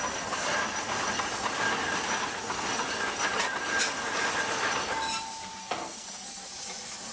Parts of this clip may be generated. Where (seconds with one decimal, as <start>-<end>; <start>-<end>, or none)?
5.6-6.5